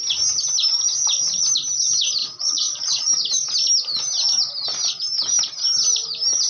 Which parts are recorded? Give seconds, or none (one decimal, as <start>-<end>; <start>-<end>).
0.0-2.2; 3.1-6.5